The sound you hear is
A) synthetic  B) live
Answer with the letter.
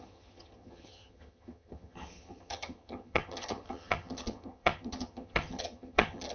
A